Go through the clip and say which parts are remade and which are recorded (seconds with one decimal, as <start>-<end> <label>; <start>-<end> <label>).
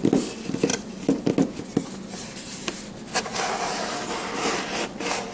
0.0-5.3 recorded